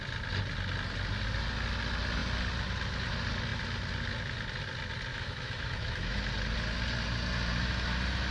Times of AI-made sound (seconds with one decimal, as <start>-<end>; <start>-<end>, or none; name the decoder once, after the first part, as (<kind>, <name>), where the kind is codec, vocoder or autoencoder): 5.1-6.2 (autoencoder, DAC-VAE)